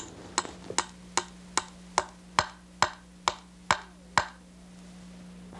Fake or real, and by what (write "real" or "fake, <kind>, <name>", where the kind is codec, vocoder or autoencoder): real